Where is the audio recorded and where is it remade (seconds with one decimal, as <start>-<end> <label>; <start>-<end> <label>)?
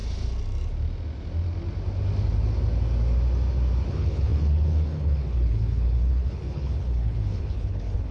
0.0-3.9 recorded; 3.9-8.1 remade